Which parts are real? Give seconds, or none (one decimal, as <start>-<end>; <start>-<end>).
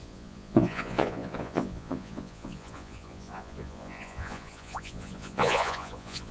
none